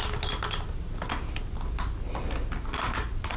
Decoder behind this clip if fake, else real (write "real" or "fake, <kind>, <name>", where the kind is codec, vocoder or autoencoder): real